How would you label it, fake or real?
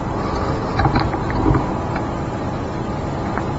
real